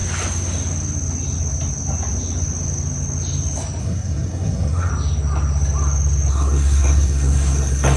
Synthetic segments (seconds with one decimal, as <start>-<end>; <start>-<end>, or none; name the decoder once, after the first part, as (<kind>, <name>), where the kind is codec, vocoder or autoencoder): 3.8-4.9 (codec, SNAC); 6.3-8.0